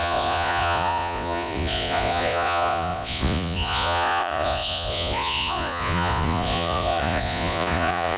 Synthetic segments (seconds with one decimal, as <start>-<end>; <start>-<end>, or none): 0.0-8.2